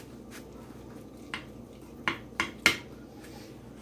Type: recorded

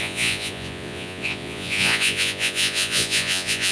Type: remade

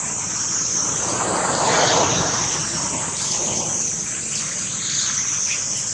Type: recorded